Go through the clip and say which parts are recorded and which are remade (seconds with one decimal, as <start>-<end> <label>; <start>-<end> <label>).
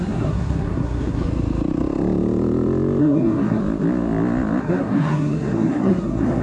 0.0-1.3 remade; 1.3-3.0 recorded; 3.0-3.6 remade; 3.6-4.6 recorded; 4.6-6.4 remade